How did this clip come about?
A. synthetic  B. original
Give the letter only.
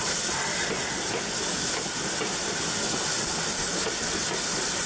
B